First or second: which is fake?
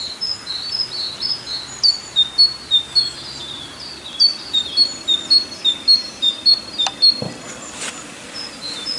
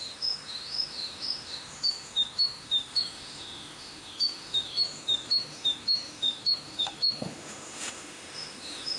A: second